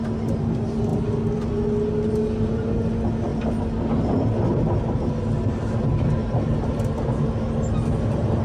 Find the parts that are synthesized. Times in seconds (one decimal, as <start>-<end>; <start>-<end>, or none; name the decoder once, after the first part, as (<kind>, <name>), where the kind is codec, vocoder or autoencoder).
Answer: none